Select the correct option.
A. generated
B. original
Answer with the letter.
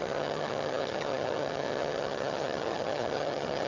A